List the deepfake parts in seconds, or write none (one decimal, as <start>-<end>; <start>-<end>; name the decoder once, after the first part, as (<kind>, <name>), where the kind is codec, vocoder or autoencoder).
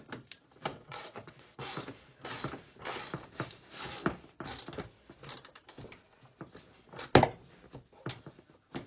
0.7-1.6 (vocoder, WaveNeXt)